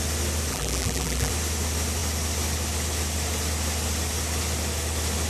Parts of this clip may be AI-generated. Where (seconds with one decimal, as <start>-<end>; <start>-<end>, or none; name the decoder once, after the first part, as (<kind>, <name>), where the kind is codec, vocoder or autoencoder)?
0.5-1.3 (vocoder, BigVGAN v2)